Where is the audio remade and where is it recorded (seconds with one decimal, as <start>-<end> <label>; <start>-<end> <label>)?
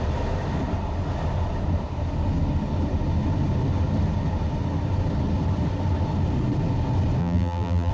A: 0.0-7.2 recorded; 7.2-7.9 remade